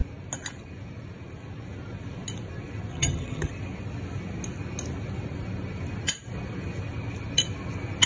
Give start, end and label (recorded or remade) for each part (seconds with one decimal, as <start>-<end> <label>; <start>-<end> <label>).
0.0-2.9 recorded; 2.9-3.5 remade; 3.5-8.1 recorded